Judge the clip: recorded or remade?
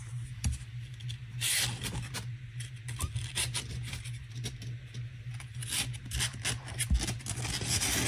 recorded